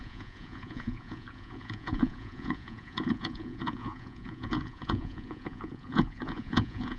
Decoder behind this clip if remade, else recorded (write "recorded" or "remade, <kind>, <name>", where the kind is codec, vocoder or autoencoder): remade, vocoder, Vocos